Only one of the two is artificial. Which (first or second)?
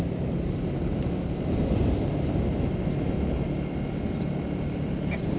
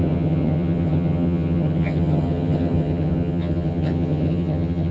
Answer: second